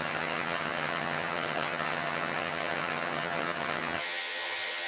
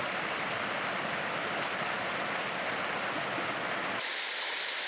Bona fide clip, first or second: second